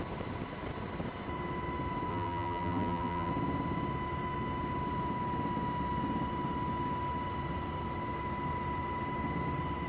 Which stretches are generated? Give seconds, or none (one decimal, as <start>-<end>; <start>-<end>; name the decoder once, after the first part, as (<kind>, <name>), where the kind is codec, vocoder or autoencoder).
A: 2.1-3.3 (vocoder, BigVGAN v2)